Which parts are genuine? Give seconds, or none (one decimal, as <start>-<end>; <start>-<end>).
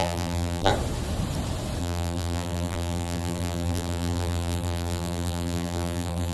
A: 0.7-1.8